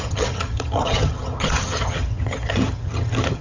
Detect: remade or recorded remade